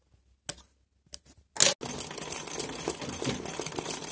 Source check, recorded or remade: recorded